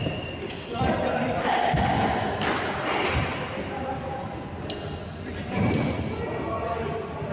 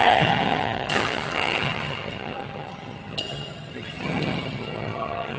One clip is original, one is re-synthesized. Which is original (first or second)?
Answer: first